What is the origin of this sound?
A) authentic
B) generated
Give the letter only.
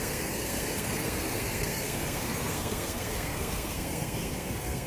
B